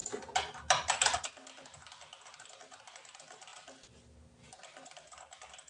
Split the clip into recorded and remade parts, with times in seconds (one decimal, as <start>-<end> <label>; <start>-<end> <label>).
0.0-5.7 recorded